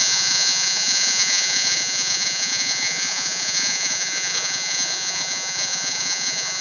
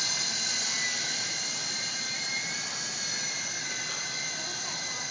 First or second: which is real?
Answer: second